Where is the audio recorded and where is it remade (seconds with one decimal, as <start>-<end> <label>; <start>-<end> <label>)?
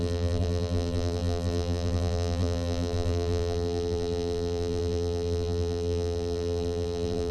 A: 0.0-7.3 remade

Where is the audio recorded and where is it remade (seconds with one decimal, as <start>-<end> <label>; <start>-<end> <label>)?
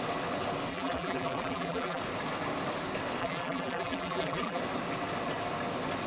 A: 0.0-0.7 recorded; 0.7-2.0 remade; 2.0-3.2 recorded; 3.2-4.6 remade; 4.6-6.1 recorded